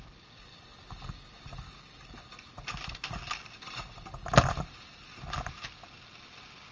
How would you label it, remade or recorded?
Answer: recorded